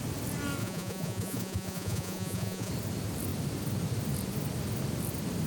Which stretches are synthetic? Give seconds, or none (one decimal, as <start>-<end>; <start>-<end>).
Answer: 0.6-2.7